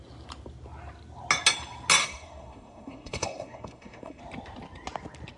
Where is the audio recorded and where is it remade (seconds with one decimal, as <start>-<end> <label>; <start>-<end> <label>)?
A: 0.0-2.0 recorded; 2.0-4.2 remade; 4.2-5.4 recorded